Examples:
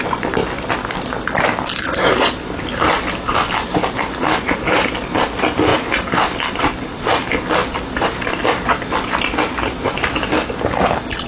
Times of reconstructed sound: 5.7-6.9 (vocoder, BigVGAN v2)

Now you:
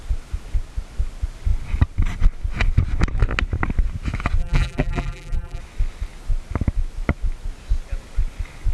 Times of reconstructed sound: 4.4-5.6 (vocoder, BigVGAN v2)

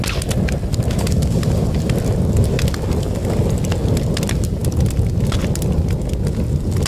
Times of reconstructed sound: none

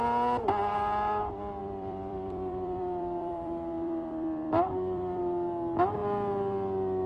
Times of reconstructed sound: 1.6-5.2 (vocoder, BigVGAN v2)

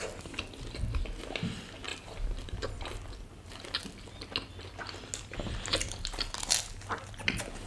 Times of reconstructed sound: 1.9-2.7 (vocoder, BigVGAN v2)

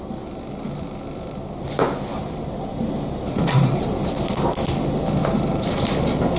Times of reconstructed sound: 2.2-3.8 (vocoder, BigVGAN v2); 5.2-5.7